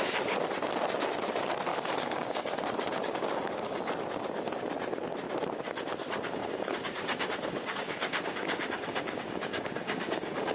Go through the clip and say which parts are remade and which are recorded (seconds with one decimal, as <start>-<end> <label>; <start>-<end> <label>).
0.0-1.7 recorded; 1.7-2.6 remade; 2.6-3.0 recorded; 3.0-3.8 remade; 3.8-6.4 recorded; 6.4-10.5 remade

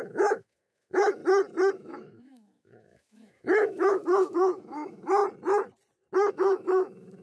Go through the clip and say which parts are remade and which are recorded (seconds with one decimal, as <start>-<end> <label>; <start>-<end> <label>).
0.0-1.2 remade; 1.2-1.7 recorded; 1.7-5.2 remade; 5.2-6.3 recorded; 6.3-7.2 remade

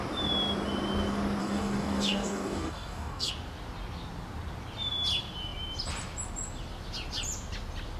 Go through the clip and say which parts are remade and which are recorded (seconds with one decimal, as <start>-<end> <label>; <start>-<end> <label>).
0.0-1.4 recorded; 1.4-3.3 remade; 3.3-8.0 recorded